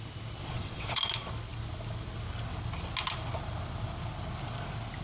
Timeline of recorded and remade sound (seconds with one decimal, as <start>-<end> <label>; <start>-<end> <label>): 0.0-0.4 recorded; 0.4-1.0 remade; 1.0-5.0 recorded